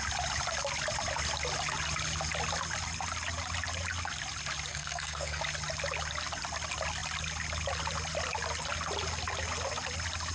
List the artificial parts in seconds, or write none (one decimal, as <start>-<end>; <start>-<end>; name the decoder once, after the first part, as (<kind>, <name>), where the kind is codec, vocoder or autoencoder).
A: 4.7-5.4 (codec, SNAC)